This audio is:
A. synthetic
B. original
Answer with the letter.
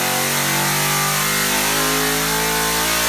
B